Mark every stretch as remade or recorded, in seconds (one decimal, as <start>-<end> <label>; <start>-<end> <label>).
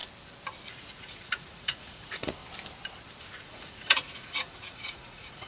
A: 0.0-0.9 recorded; 0.9-2.4 remade; 2.4-3.4 recorded; 3.4-5.5 remade